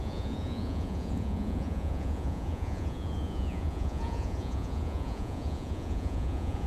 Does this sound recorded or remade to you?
remade